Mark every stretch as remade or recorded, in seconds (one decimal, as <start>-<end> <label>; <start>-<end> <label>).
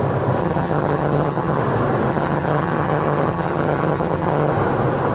0.0-0.4 recorded; 0.4-1.6 remade; 1.6-2.1 recorded; 2.1-4.5 remade; 4.5-5.1 recorded